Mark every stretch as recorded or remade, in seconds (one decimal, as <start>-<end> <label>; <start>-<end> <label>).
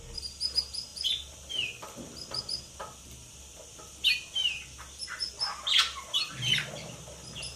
0.0-2.8 remade; 2.8-3.3 recorded; 3.3-7.6 remade